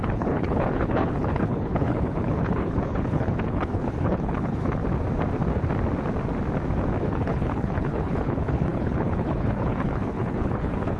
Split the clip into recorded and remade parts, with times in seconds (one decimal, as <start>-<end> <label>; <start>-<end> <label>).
0.0-4.8 remade; 4.8-7.0 recorded; 7.0-11.0 remade